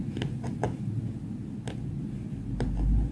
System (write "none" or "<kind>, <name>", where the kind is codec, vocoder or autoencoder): none